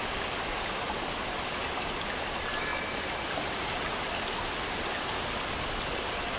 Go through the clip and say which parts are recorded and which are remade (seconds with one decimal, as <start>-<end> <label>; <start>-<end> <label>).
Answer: 0.0-2.7 remade; 2.7-6.4 recorded